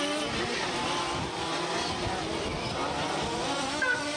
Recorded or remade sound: recorded